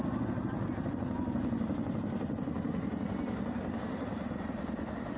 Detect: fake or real real